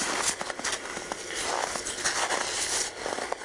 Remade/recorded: recorded